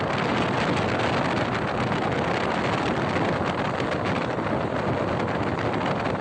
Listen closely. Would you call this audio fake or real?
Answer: real